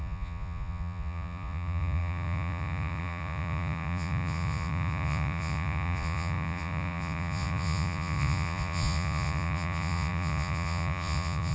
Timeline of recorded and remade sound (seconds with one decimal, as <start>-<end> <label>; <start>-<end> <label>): 0.0-11.5 remade